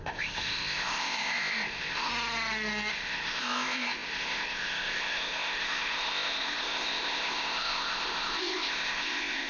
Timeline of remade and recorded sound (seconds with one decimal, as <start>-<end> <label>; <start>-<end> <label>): 0.0-2.1 remade; 2.1-2.9 recorded; 2.9-9.5 remade